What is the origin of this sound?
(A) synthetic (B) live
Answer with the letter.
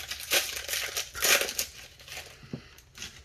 B